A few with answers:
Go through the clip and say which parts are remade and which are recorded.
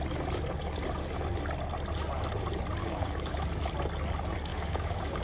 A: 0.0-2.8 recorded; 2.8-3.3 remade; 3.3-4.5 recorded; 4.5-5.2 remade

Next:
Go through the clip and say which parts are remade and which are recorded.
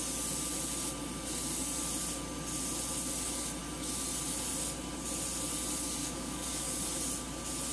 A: 0.0-6.0 recorded; 6.0-6.8 remade; 6.8-7.7 recorded